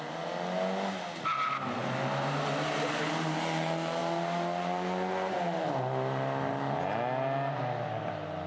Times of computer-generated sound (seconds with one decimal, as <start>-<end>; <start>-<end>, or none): none